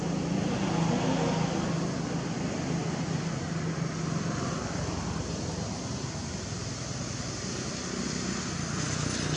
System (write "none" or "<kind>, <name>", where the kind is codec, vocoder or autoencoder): none